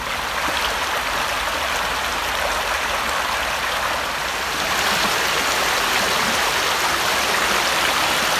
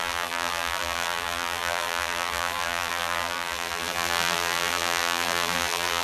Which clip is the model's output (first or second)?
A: second